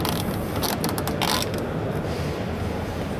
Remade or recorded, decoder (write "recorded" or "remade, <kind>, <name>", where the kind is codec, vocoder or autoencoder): recorded